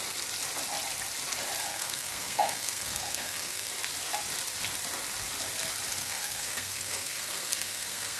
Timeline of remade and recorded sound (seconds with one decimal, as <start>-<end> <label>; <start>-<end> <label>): 0.0-1.7 recorded; 1.7-3.7 remade; 3.7-6.0 recorded; 6.0-8.2 remade